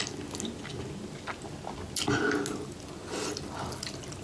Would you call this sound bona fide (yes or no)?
yes